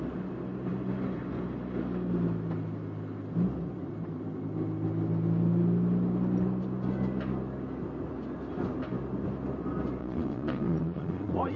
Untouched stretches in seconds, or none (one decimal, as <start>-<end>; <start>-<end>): 0.0-10.0